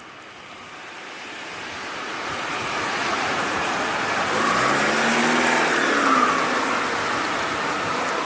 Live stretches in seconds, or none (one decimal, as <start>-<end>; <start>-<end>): 0.0-1.8; 3.8-8.3